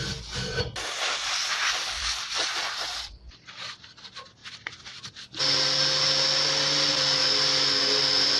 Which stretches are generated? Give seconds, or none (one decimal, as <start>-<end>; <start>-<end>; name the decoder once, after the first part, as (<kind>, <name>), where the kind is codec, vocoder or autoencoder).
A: 1.5-3.7 (vocoder, BigVGAN v2); 4.4-5.0